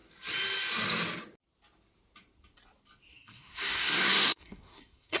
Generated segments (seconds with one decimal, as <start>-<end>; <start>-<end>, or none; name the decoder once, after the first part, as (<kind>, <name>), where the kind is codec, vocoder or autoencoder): 3.1-5.2 (codec, SNAC)